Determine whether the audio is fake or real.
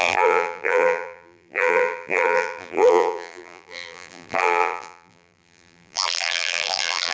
fake